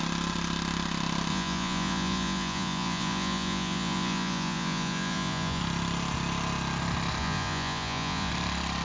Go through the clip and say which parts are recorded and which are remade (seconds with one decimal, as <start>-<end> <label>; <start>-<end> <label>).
0.0-1.3 recorded; 1.3-5.6 remade; 5.6-7.2 recorded; 7.2-8.3 remade; 8.3-8.8 recorded